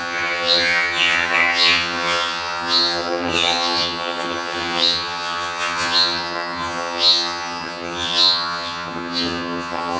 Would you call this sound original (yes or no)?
no